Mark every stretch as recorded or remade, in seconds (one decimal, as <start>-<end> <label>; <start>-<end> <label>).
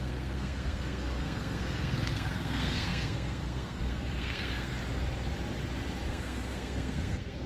0.0-4.7 remade; 4.7-6.1 recorded; 6.1-7.5 remade